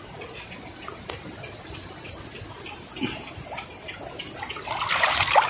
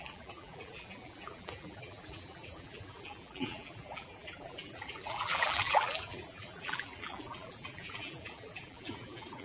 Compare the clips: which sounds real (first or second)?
first